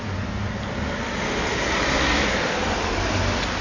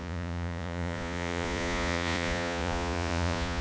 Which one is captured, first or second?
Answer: first